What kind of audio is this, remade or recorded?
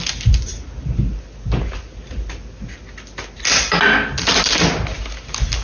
recorded